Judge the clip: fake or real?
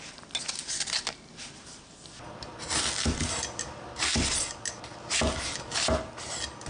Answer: real